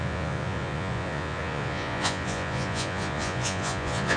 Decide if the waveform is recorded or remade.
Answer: remade